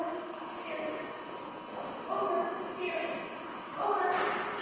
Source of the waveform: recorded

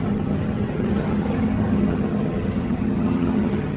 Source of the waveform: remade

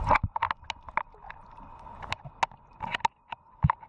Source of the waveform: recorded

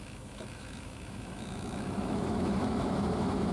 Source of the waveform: remade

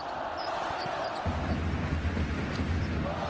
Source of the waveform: recorded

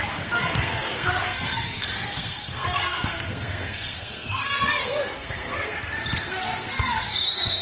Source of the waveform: remade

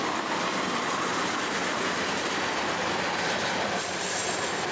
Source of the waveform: remade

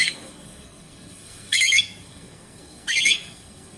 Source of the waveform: remade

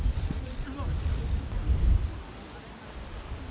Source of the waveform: recorded